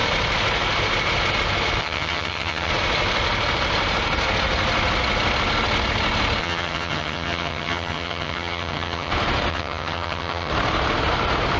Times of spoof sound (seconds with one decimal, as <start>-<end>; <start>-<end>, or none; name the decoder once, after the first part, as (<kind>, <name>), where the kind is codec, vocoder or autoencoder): 1.8-2.7 (vocoder, HiFi-GAN); 6.4-9.1; 9.5-10.5